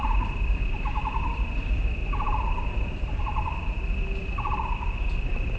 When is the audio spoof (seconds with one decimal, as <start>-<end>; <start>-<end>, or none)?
none